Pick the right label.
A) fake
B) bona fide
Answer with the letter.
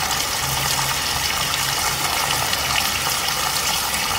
B